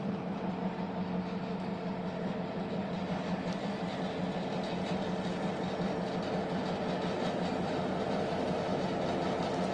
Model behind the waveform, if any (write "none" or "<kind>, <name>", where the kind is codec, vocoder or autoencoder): none